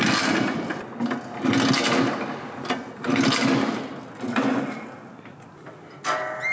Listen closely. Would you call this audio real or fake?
real